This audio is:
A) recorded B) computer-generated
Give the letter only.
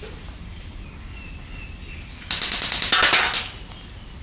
A